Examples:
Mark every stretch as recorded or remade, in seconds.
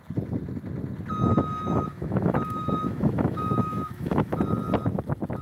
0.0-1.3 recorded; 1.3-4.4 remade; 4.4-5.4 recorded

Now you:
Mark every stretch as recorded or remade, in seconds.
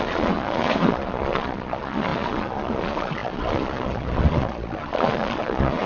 0.0-5.9 remade